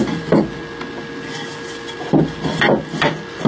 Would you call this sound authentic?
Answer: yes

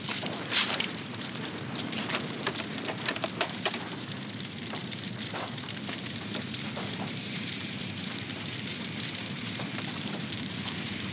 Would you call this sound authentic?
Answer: no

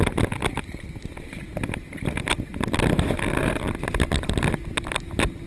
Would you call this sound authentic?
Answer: yes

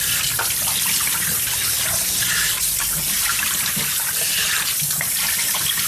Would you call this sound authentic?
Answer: yes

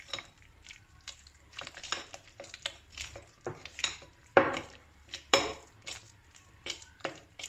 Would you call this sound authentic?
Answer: no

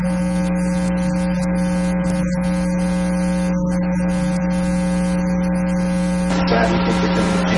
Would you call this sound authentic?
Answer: yes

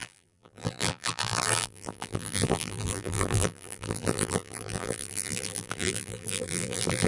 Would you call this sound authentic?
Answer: no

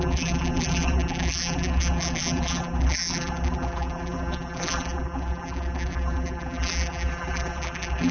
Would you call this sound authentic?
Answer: no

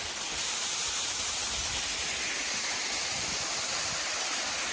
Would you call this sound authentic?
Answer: no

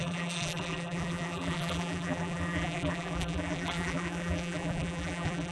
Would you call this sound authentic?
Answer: no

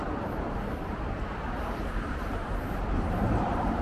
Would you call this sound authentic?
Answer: no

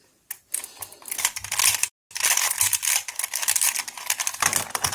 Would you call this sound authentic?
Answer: yes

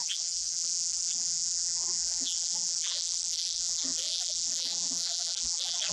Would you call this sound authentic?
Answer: no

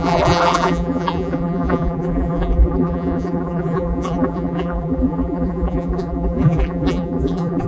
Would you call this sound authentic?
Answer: no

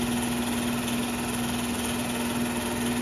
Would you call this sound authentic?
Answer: yes